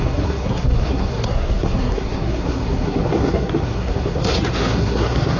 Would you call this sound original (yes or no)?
no